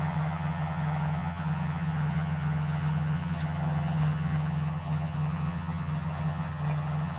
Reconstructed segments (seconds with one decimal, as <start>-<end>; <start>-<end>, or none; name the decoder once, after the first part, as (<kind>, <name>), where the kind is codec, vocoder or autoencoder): 0.0-7.2 (vocoder, HiFi-GAN)